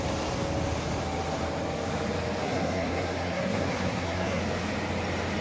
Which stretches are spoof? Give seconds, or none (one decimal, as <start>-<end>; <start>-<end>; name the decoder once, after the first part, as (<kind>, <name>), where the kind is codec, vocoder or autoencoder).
2.4-4.4 (codec, SNAC)